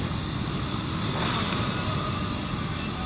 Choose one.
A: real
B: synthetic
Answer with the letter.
A